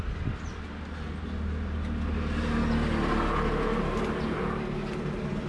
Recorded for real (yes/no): yes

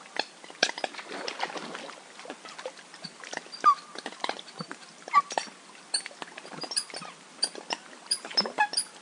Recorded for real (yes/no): yes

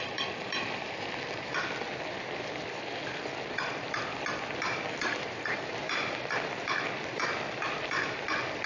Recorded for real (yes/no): no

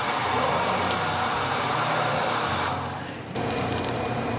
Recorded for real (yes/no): no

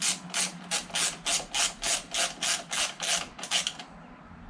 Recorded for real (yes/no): yes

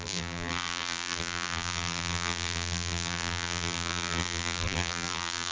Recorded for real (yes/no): no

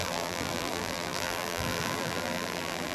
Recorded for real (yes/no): no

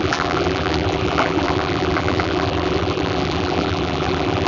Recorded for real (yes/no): no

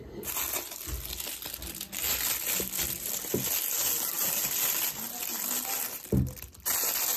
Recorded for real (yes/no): yes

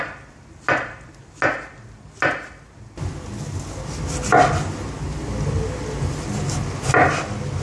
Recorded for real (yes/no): yes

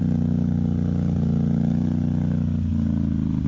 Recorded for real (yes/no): yes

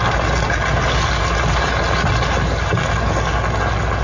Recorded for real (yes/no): yes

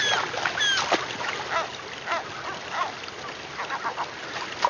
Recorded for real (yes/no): yes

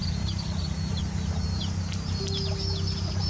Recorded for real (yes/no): yes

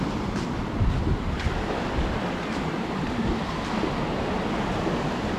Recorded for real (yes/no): yes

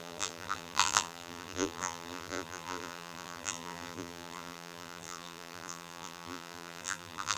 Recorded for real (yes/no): no